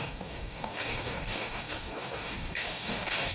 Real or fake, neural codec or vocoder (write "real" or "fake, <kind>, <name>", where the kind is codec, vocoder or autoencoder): fake, codec, DAC